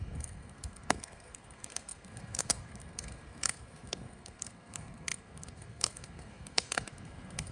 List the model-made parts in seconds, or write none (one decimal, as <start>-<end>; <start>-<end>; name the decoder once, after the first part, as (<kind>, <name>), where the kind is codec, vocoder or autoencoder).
0.0-7.5 (codec, SNAC)